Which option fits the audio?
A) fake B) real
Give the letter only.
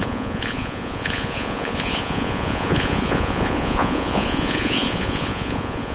A